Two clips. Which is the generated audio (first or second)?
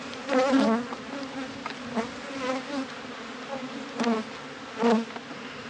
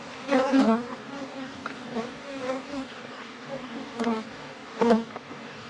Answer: second